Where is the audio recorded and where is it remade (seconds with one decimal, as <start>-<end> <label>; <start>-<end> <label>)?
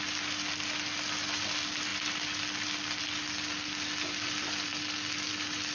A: 0.0-5.7 recorded